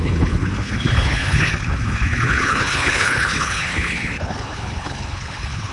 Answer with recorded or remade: remade